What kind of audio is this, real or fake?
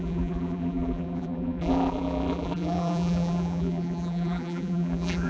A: fake